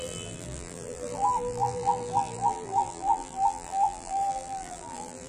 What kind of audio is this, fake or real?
fake